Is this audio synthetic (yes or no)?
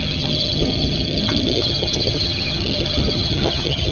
yes